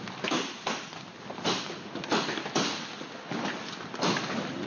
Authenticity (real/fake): real